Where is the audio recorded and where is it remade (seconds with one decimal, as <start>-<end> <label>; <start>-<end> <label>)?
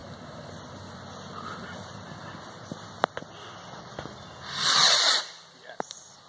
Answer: 0.0-3.8 recorded; 3.8-6.3 remade